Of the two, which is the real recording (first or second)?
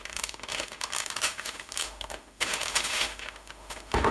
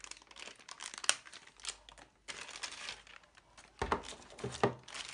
second